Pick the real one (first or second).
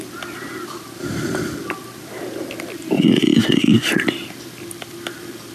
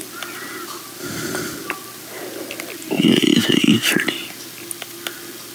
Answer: second